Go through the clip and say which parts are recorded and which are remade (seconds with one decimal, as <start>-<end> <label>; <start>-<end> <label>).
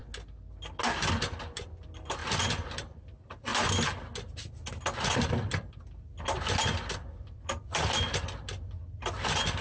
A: 0.0-1.4 recorded; 1.4-3.5 remade; 3.5-5.1 recorded; 5.1-6.1 remade; 6.1-6.9 recorded; 6.9-9.6 remade